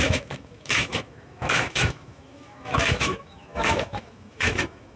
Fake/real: fake